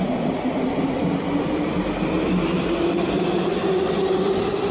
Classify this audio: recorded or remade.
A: recorded